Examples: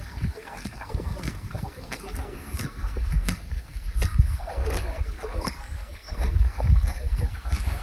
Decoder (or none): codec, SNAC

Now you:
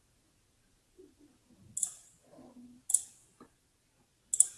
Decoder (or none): none